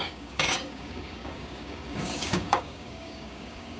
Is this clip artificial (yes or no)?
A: yes